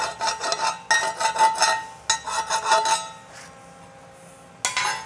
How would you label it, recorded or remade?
recorded